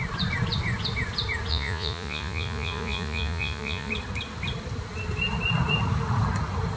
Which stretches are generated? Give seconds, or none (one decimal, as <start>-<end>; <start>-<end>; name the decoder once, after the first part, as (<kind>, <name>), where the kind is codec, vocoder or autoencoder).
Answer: 1.5-3.9 (vocoder, Vocos)